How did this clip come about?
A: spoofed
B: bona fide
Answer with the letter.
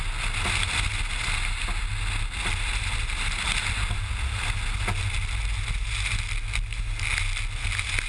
B